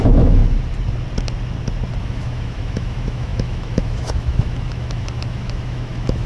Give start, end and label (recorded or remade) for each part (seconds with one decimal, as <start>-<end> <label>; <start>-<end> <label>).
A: 0.0-0.4 remade; 0.4-2.0 recorded; 2.0-6.3 remade